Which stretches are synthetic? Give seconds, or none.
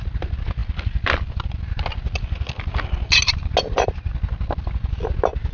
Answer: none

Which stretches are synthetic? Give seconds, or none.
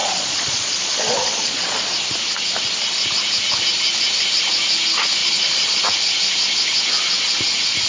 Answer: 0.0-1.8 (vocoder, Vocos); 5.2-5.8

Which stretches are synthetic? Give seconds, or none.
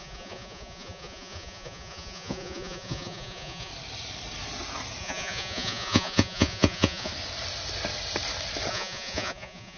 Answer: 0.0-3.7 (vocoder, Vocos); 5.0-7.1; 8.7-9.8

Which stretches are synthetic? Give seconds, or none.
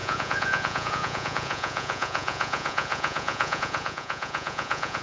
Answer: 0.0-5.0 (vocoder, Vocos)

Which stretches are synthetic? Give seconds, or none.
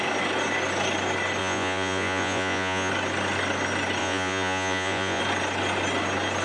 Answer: 1.4-2.9 (vocoder, Vocos); 4.0-5.2